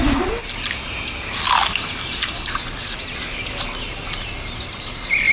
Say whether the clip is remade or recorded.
recorded